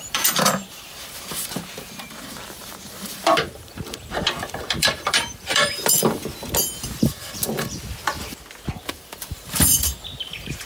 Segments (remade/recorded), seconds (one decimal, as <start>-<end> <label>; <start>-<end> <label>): 0.0-6.2 remade; 6.2-8.9 recorded; 8.9-10.7 remade